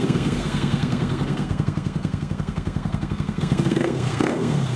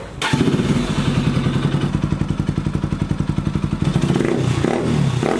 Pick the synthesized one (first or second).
first